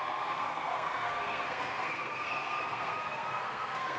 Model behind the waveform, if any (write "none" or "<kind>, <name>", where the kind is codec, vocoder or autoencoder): codec, SNAC